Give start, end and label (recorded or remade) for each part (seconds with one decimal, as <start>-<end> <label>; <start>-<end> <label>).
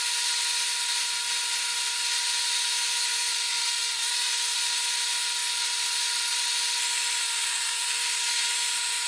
0.0-3.1 recorded; 3.1-4.6 remade; 4.6-7.2 recorded; 7.2-8.5 remade; 8.5-9.1 recorded